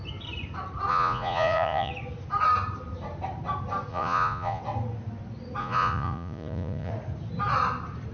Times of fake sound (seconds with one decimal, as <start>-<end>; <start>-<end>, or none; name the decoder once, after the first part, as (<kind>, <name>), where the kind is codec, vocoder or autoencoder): 0.9-1.9 (vocoder, Vocos); 3.9-4.6; 5.6-6.9